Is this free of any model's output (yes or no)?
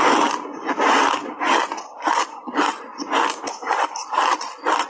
yes